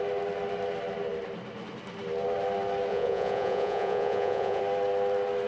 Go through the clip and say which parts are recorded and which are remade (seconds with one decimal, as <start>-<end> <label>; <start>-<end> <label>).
0.0-2.9 recorded; 2.9-4.6 remade; 4.6-5.5 recorded